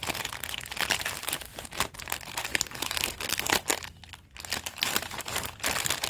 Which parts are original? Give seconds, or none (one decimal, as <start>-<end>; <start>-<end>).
3.7-4.7; 5.3-6.1